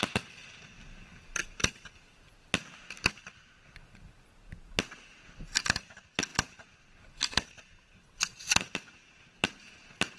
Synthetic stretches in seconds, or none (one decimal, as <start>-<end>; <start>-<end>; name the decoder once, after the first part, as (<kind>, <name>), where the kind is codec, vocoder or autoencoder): none